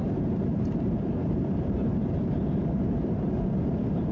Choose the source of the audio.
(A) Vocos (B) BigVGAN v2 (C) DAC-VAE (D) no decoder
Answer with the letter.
B